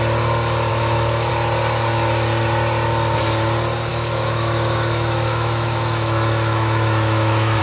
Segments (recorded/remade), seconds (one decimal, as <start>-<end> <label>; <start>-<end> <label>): 0.0-0.7 recorded; 0.7-1.3 remade; 1.3-3.9 recorded; 3.9-7.6 remade